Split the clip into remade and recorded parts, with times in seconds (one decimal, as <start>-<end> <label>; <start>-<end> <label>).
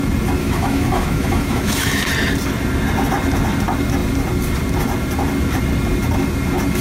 0.0-0.4 recorded; 0.4-2.1 remade; 2.1-6.8 recorded